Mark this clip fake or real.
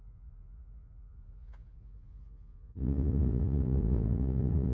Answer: fake